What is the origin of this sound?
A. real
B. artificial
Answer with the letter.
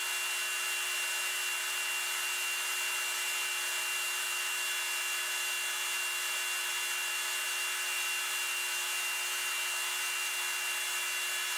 A